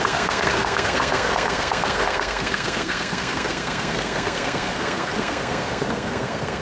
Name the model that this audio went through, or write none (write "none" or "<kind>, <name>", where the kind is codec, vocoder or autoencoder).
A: codec, SNAC